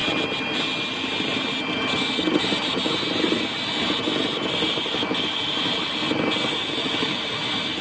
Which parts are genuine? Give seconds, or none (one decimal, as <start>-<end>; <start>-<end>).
0.0-7.8